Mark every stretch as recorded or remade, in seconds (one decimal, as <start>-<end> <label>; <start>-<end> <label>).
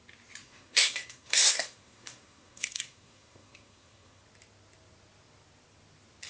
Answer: 0.0-0.4 recorded; 0.4-4.2 remade; 4.2-6.3 recorded